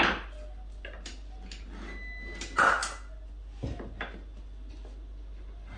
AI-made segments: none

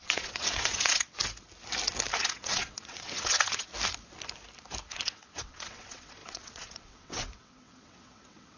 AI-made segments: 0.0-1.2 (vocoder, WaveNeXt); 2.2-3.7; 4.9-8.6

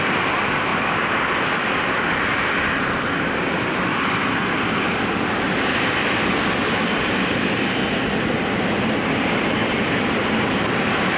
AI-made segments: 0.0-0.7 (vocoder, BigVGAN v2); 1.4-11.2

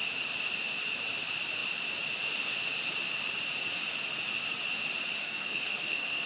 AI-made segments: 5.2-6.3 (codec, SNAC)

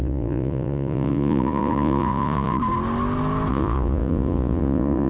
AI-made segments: 0.0-2.6 (vocoder, Vocos); 3.5-5.1